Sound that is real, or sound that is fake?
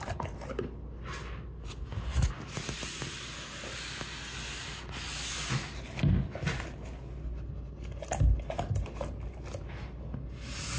real